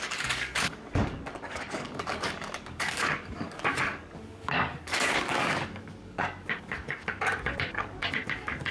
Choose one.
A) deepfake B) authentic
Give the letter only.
A